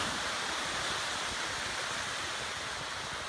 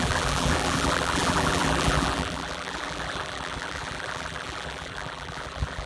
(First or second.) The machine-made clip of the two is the second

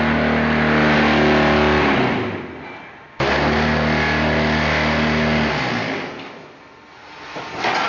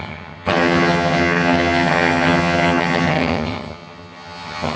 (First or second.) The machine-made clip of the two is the second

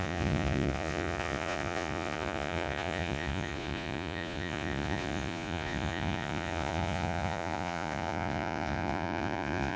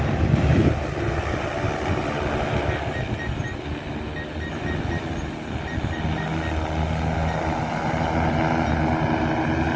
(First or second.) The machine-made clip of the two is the first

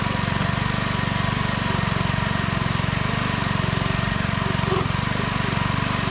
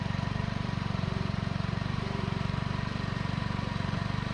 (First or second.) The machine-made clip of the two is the second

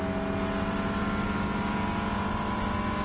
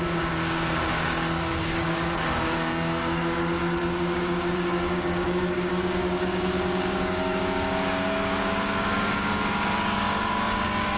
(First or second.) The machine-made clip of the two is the second